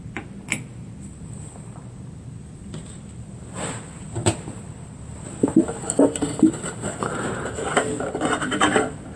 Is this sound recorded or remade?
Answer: recorded